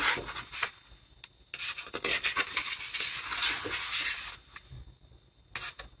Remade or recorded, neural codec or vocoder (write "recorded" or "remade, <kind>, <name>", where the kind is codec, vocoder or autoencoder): recorded